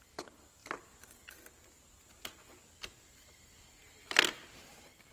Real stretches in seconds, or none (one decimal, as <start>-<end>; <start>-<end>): 0.0-5.1